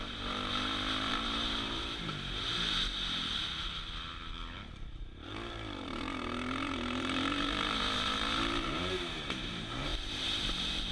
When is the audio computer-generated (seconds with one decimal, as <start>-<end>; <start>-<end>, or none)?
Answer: 0.0-2.1; 4.7-10.9